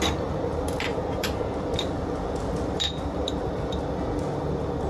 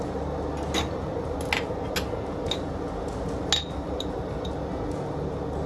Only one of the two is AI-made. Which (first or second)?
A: first